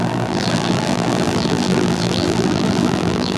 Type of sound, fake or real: fake